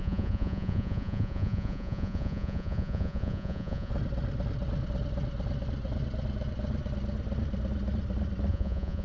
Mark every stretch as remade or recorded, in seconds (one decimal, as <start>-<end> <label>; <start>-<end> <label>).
0.0-3.9 remade; 3.9-8.5 recorded; 8.5-9.0 remade